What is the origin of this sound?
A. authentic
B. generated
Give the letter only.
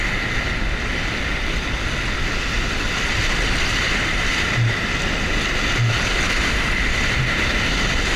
A